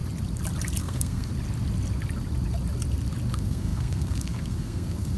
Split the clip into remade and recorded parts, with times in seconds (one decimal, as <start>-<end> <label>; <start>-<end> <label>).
0.0-0.8 recorded; 0.8-1.3 remade; 1.3-3.3 recorded; 3.3-5.2 remade